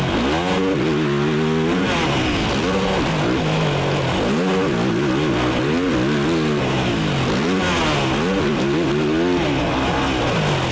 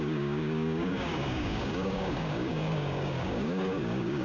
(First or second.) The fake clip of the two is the second